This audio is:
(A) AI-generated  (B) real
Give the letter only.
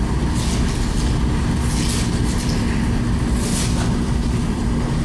B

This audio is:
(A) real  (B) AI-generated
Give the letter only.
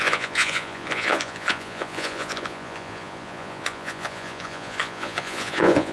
B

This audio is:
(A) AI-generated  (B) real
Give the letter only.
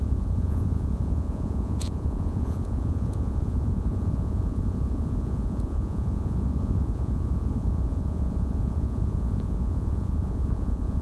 A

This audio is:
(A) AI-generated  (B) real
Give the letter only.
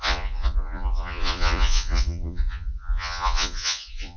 A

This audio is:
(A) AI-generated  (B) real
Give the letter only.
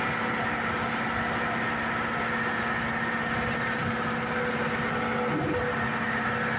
B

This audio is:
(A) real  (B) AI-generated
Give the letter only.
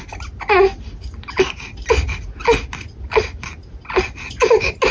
A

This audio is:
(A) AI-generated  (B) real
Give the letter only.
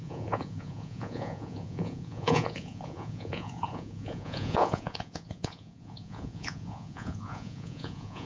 A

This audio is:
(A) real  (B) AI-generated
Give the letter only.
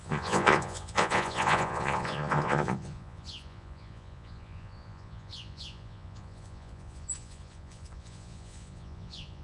B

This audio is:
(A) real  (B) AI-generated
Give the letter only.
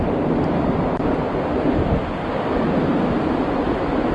A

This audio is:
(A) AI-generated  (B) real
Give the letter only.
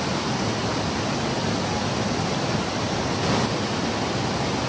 B